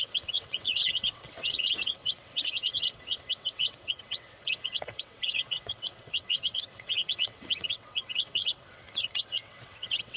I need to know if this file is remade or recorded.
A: remade